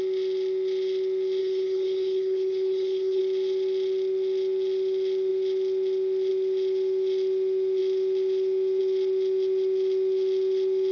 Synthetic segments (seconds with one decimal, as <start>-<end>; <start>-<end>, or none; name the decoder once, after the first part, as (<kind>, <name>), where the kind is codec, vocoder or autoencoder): 1.4-3.2 (codec, HILCodec)